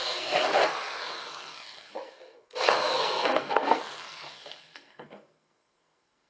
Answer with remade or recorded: remade